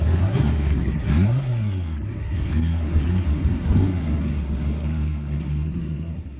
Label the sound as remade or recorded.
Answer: remade